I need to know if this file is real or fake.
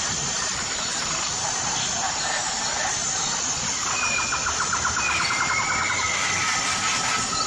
real